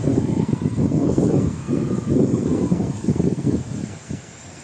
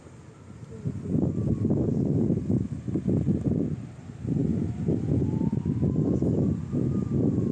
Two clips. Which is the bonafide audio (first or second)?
second